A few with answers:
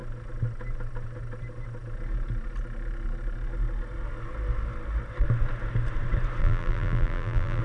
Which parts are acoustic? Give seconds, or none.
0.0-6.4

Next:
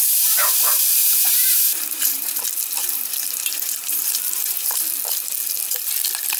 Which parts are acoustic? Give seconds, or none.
0.0-0.9; 2.4-2.8; 4.7-6.4

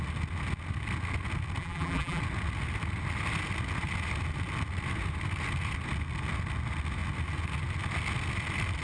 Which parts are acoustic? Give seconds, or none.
0.0-1.6; 2.2-8.8

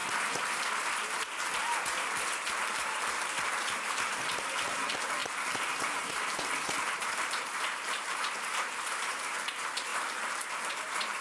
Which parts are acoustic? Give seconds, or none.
0.0-2.5

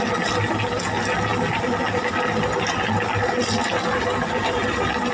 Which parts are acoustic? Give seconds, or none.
0.0-5.1

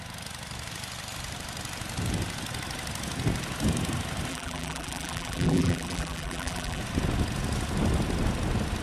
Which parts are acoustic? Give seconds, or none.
0.0-4.3; 6.8-8.8

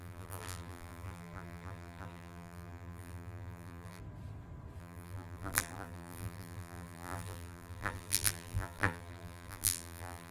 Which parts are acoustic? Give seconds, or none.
4.0-4.8

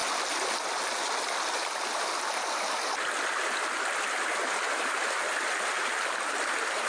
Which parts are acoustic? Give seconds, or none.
0.0-6.9